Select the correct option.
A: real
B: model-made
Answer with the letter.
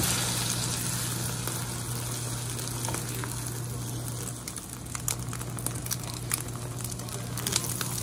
A